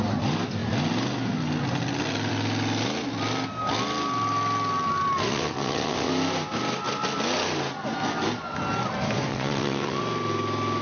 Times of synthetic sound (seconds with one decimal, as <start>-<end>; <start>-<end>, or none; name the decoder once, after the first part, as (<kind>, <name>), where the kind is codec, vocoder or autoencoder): 5.3-6.1 (vocoder, WaveNeXt); 9.3-10.0